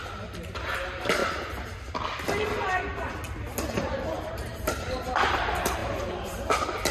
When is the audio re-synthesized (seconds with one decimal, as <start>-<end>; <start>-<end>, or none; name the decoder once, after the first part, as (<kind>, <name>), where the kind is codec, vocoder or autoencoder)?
0.0-1.2 (vocoder, BigVGAN v2); 3.6-6.9